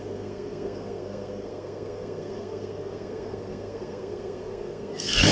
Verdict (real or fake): fake